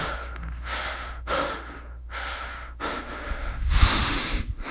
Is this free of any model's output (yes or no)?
no